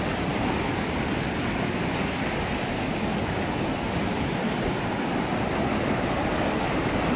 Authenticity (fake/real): real